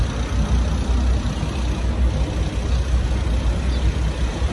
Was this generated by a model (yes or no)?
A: no